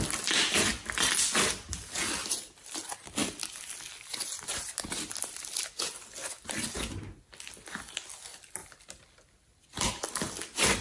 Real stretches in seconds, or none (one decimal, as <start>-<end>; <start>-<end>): 0.0-10.8